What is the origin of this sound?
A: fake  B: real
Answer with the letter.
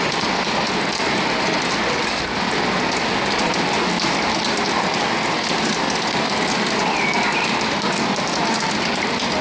B